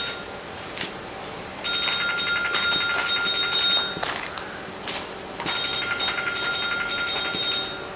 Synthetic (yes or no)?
no